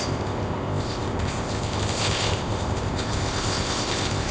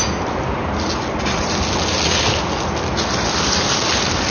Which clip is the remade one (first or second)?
first